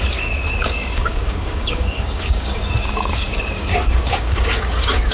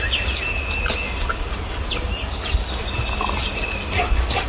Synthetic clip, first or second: first